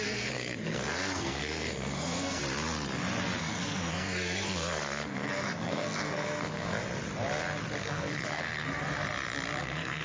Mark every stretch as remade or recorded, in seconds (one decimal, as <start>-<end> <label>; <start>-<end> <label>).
0.0-2.4 remade; 2.4-3.4 recorded; 3.4-6.7 remade; 6.7-7.8 recorded; 7.8-8.8 remade; 8.8-9.6 recorded; 9.6-10.0 remade